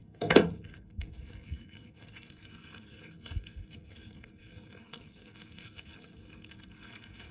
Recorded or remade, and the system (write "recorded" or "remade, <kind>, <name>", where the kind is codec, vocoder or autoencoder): remade, codec, SNAC